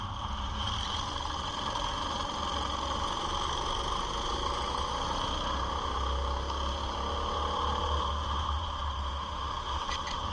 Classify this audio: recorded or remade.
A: recorded